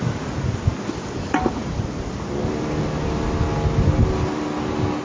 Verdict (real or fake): real